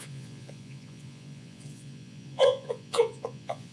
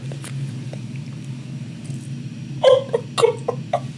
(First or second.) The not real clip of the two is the first